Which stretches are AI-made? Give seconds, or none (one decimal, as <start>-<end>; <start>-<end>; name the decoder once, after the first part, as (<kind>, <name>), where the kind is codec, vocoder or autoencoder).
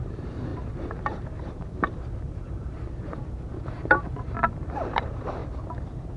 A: 0.0-0.5 (vocoder, BigVGAN v2); 1.0-5.4